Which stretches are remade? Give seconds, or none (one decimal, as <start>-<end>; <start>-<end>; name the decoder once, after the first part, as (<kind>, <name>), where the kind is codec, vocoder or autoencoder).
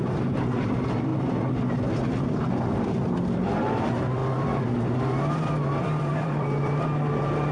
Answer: 0.0-1.1 (vocoder, BigVGAN v2); 2.5-7.5